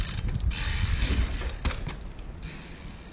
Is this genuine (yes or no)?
yes